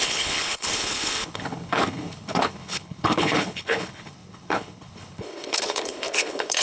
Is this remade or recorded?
remade